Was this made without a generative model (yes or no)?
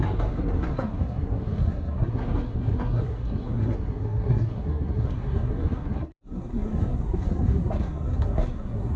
no